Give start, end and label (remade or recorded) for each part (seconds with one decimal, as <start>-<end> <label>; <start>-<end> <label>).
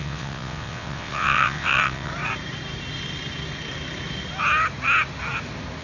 0.0-2.1 remade; 2.1-5.8 recorded